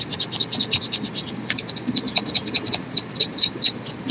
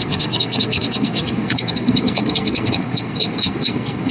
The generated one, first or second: second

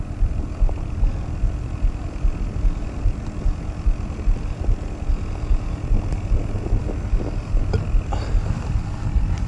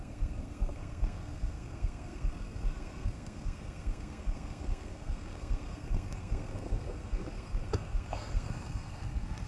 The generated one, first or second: second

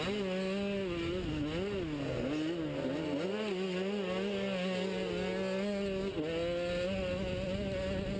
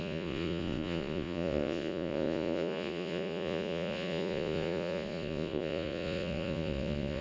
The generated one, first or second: second